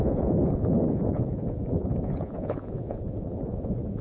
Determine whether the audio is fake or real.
fake